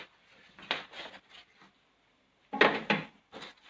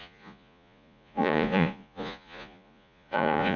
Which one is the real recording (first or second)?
first